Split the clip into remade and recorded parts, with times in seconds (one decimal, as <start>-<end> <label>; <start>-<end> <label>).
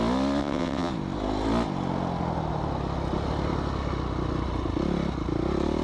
0.0-0.4 recorded; 0.4-0.9 remade; 0.9-5.8 recorded